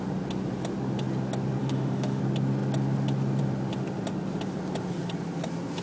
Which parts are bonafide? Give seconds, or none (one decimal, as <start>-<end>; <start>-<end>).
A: 0.0-1.6; 2.2-5.8